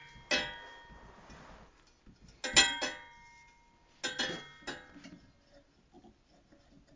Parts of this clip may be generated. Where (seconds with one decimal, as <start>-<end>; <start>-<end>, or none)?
none